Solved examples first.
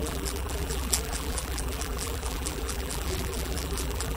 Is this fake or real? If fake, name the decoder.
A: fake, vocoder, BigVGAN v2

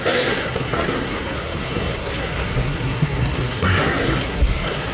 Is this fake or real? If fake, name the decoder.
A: fake, codec, SNAC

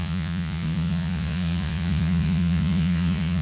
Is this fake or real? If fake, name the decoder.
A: fake, vocoder, Vocos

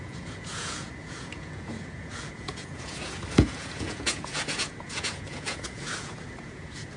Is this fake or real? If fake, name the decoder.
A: fake, vocoder, Vocos